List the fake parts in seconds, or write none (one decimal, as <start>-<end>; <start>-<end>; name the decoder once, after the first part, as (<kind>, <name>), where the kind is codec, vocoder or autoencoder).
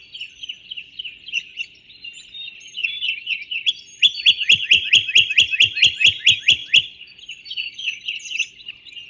none